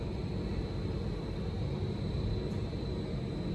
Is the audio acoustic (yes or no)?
yes